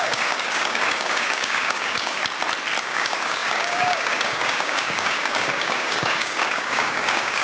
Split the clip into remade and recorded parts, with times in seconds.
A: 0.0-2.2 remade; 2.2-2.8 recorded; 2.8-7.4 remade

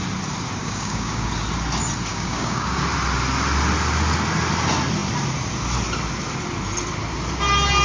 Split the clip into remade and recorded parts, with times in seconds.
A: 0.0-0.6 recorded; 0.6-1.3 remade; 1.3-2.1 recorded; 2.1-2.8 remade; 2.8-7.8 recorded

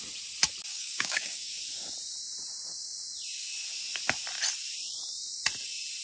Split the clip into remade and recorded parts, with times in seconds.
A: 0.0-0.7 recorded; 0.7-1.5 remade; 1.5-6.0 recorded

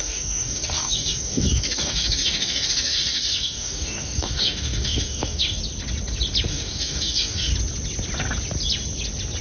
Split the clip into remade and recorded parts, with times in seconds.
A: 0.0-5.6 remade; 5.6-6.5 recorded; 6.5-7.5 remade; 7.5-9.4 recorded